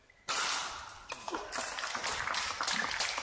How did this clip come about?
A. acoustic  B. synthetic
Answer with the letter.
A